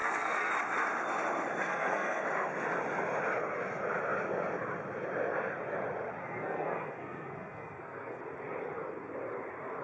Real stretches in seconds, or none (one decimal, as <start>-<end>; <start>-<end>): 0.5-1.7; 2.2-6.2; 8.2-9.8